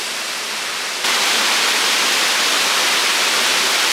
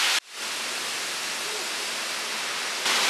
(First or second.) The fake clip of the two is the first